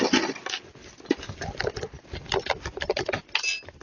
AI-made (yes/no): no